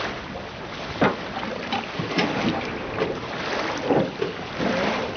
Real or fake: real